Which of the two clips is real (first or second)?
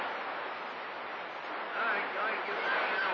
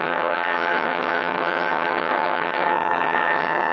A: first